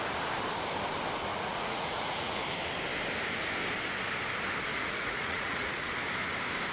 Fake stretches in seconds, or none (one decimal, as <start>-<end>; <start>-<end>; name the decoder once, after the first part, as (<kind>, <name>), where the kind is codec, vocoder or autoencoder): 1.3-2.4 (vocoder, Vocos); 4.7-5.9